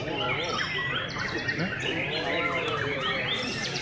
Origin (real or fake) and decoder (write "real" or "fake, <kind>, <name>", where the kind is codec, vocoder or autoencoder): fake, vocoder, BigVGAN v2